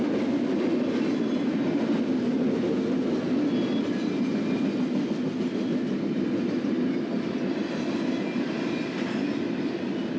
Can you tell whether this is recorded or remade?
recorded